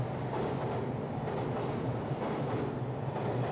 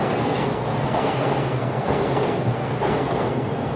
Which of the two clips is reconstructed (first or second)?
second